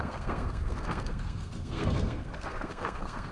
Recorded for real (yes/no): no